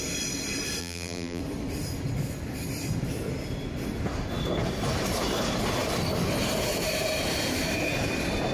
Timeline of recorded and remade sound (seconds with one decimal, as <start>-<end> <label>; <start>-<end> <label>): 0.0-0.8 recorded; 0.8-1.4 remade; 1.4-8.5 recorded